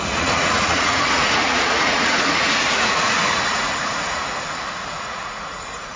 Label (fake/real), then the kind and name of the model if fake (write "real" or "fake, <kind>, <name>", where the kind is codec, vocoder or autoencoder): fake, vocoder, Vocos